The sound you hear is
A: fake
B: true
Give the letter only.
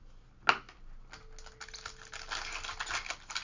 B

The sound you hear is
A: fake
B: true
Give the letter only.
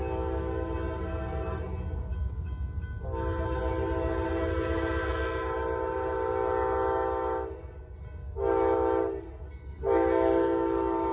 B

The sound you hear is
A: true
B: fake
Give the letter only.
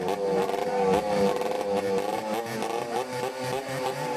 A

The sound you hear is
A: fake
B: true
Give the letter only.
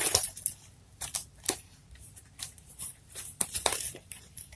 A